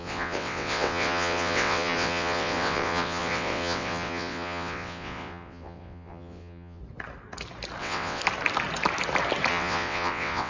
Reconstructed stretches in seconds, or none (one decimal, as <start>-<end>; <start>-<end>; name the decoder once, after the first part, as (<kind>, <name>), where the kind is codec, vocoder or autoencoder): 0.0-6.8 (vocoder, WaveNeXt); 7.8-8.2; 9.5-10.5